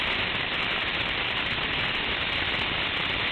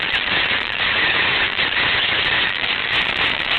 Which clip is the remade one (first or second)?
second